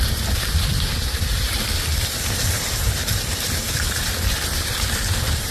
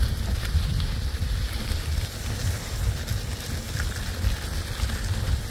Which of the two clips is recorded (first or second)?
second